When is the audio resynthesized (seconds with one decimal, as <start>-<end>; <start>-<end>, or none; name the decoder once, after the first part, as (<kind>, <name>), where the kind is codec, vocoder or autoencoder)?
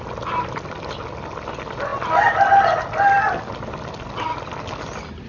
none